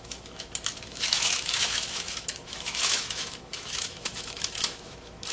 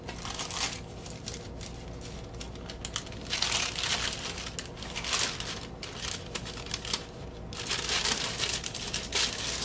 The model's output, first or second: first